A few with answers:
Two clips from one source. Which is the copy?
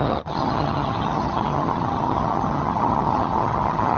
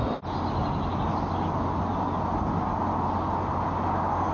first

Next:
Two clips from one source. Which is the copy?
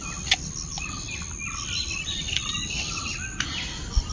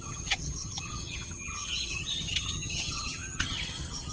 second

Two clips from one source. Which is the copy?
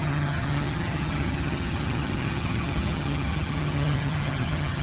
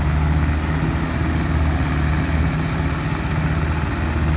first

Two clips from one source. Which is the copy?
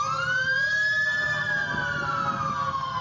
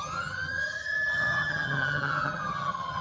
second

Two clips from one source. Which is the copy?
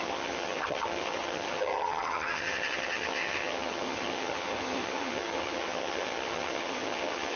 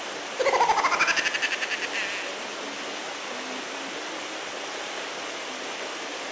first